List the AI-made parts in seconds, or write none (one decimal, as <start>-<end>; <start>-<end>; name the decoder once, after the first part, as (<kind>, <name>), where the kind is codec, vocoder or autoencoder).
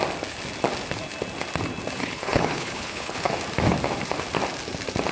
2.0-3.3 (codec, HILCodec)